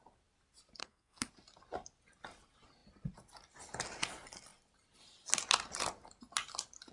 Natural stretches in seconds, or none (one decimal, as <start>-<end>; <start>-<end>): 0.0-0.8; 1.3-6.9

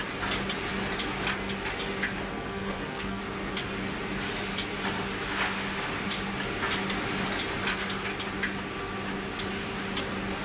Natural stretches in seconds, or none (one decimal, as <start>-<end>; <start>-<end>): 0.0-2.3; 3.2-10.4

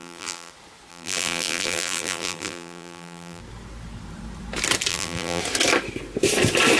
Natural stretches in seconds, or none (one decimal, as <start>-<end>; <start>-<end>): 0.5-0.9; 3.4-4.9; 5.4-6.8

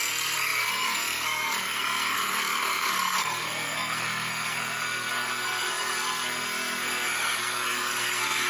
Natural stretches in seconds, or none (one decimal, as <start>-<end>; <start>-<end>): none

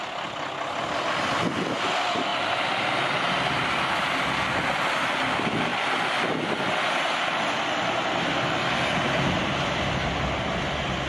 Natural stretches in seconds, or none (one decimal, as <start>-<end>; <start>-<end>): 0.0-11.1

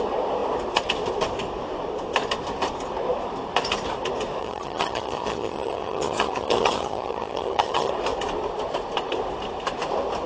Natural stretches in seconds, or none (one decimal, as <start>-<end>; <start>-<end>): 0.0-4.4; 7.9-10.3